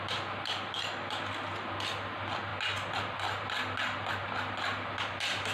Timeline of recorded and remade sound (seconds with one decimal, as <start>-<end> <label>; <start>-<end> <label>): 0.0-5.5 recorded